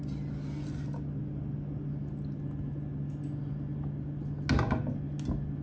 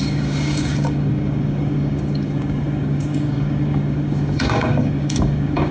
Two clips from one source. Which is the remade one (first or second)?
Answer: second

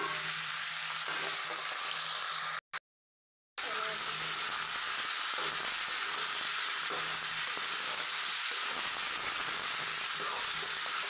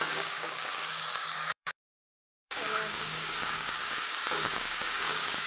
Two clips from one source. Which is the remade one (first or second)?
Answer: second